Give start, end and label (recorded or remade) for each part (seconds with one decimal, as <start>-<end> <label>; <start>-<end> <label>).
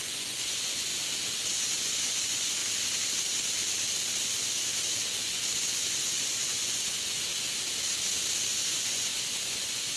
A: 0.0-0.9 remade; 0.9-1.8 recorded; 1.8-2.6 remade; 2.6-5.2 recorded; 5.2-7.3 remade; 7.3-8.5 recorded; 8.5-10.0 remade